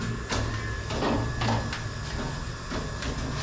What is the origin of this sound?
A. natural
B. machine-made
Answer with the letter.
A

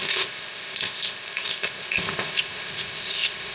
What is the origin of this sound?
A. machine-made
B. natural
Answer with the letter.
A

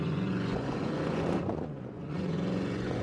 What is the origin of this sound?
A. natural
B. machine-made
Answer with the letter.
B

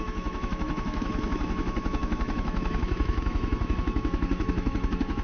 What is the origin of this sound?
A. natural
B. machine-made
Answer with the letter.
B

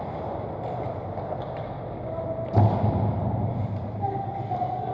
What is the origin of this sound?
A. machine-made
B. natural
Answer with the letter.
B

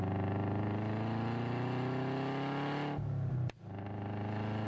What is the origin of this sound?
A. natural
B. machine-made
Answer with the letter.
A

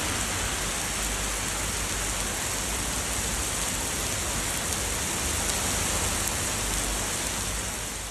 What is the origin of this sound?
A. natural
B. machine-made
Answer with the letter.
A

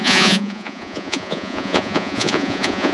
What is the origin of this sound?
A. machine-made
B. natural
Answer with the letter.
A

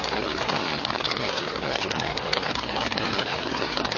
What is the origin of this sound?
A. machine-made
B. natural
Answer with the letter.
A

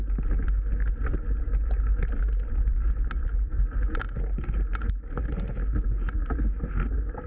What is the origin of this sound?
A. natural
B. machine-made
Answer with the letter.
A